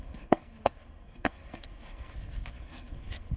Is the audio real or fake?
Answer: fake